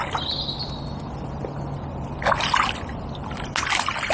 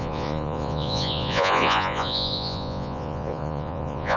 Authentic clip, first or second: first